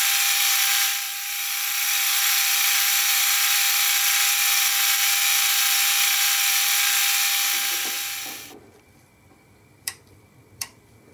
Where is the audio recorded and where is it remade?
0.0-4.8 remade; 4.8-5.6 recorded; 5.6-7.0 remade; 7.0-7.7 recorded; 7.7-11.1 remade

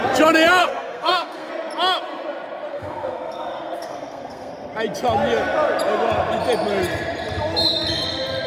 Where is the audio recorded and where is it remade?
0.0-0.6 recorded; 0.6-1.5 remade; 1.5-2.7 recorded; 2.7-4.5 remade; 4.5-8.5 recorded

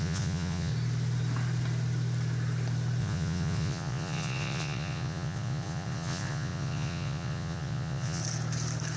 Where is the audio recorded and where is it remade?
0.0-0.7 remade; 0.7-3.0 recorded; 3.0-8.2 remade; 8.2-9.0 recorded

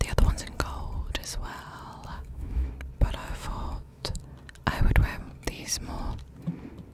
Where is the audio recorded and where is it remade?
0.0-2.1 recorded; 2.1-2.7 remade; 2.7-3.2 recorded; 3.2-4.2 remade; 4.2-6.9 recorded

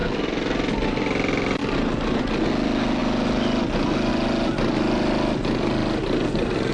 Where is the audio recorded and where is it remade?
0.0-1.6 recorded; 1.6-2.2 remade; 2.2-3.0 recorded; 3.0-4.1 remade; 4.1-6.7 recorded

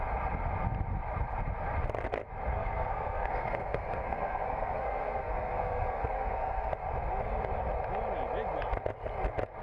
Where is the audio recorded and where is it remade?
0.0-2.5 recorded; 2.5-6.7 remade; 6.7-9.6 recorded

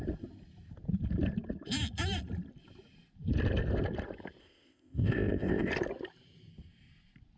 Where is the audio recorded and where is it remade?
0.0-4.4 recorded; 4.4-5.7 remade; 5.7-7.4 recorded